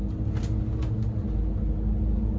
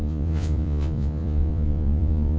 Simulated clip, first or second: second